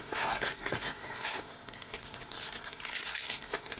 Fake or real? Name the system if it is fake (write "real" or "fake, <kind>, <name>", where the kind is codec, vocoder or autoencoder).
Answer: fake, codec, SNAC